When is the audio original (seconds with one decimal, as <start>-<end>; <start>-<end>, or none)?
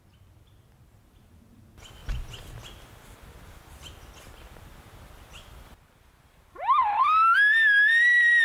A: 0.0-8.4